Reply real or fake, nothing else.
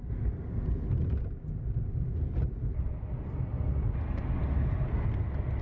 real